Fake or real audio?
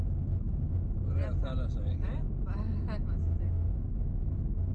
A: real